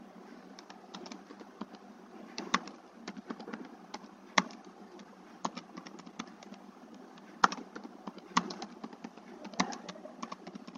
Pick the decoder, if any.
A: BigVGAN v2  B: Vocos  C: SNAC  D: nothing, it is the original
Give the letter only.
D